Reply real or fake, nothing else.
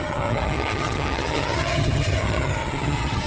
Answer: fake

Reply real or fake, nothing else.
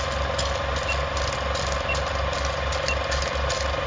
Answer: real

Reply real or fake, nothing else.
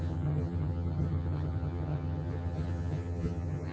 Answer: fake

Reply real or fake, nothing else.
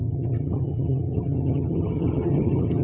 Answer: fake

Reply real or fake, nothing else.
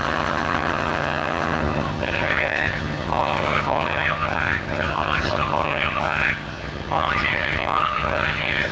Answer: fake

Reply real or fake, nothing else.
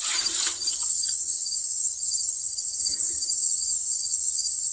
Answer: fake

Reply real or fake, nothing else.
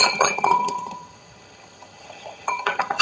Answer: fake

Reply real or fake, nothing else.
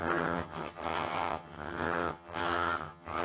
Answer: fake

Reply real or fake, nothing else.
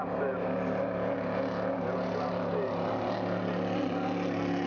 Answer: real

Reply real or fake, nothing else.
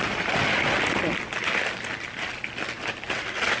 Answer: real